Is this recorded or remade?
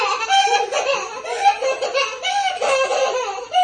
recorded